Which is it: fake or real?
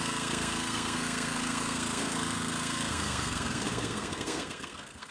fake